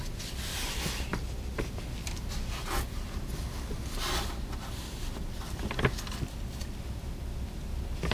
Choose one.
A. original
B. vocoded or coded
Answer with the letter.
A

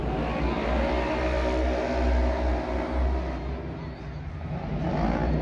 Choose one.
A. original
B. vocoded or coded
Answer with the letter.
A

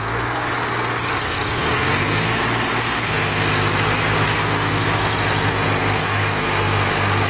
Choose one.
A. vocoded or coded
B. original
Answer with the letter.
B